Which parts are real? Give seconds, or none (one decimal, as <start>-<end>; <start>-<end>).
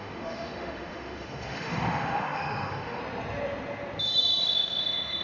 3.0-4.4